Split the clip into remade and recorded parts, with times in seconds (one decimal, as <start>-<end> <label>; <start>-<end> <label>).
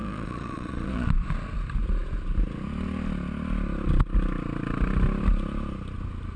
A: 0.0-1.3 remade; 1.3-6.4 recorded